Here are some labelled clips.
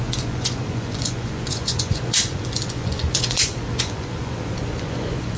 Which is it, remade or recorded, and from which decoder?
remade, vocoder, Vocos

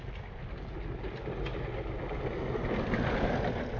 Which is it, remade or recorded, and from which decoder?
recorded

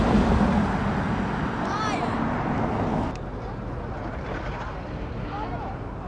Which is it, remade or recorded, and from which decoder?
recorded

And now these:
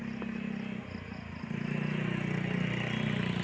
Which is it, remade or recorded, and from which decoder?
recorded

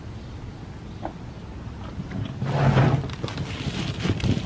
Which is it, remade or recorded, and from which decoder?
recorded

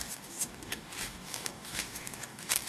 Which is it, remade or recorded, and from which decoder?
remade, codec, DAC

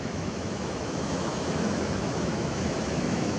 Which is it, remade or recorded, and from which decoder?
remade, autoencoder, DAC-VAE